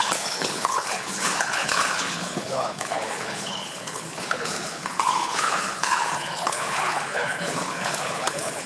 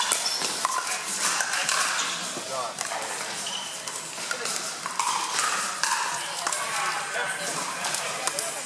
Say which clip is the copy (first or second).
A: first